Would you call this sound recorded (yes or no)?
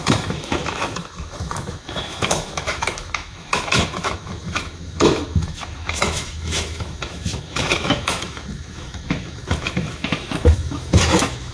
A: no